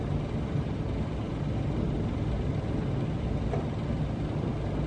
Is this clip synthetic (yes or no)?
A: no